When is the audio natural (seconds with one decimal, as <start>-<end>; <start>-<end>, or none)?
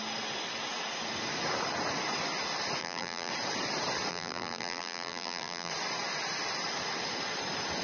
0.0-2.8; 3.3-4.1; 5.7-7.8